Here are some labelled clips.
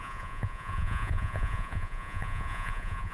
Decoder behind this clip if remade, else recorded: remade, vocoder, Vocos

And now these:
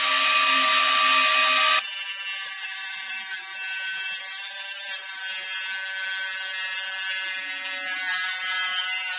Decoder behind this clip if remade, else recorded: recorded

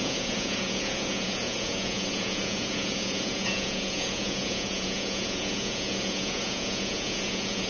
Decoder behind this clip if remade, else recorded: remade, vocoder, Vocos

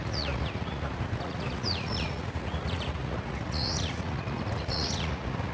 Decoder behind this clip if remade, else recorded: remade, vocoder, Vocos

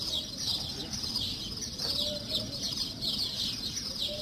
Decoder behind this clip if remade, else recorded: recorded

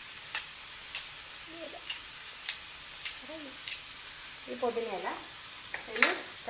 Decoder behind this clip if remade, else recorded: recorded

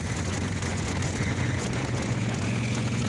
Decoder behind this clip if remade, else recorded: remade, vocoder, Vocos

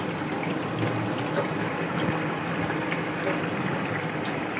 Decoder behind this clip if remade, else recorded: recorded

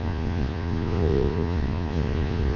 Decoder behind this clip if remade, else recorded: remade, vocoder, Vocos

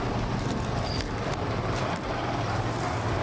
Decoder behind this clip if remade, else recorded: recorded